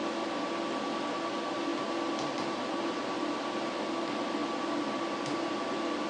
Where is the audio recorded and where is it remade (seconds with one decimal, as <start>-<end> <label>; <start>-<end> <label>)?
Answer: 0.0-6.1 recorded